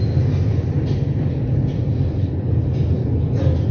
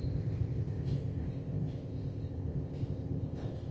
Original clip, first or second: first